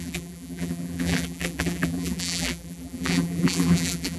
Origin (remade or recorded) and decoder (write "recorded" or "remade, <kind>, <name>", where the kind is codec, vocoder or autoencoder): remade, vocoder, BigVGAN v2